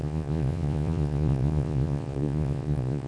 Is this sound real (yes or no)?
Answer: no